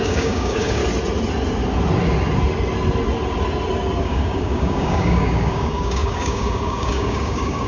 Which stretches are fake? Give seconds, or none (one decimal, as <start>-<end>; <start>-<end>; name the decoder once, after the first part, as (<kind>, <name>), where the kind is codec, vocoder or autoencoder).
0.0-0.8 (codec, DAC); 4.0-7.7